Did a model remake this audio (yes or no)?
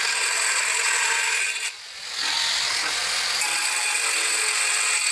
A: no